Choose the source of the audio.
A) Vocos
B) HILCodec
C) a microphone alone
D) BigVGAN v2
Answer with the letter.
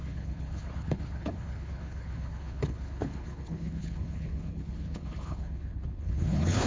B